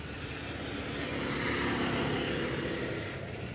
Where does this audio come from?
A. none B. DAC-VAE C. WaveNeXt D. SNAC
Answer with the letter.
A